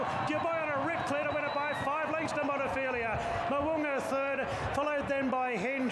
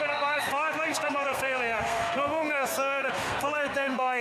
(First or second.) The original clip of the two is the first